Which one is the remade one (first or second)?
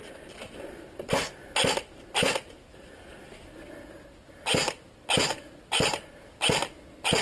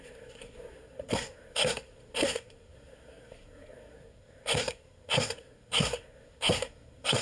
second